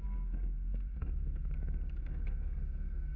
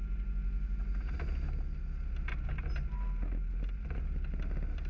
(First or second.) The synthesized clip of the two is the first